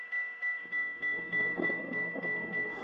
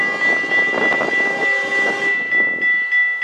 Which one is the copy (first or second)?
first